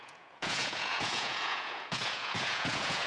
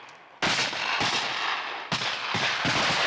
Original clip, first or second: second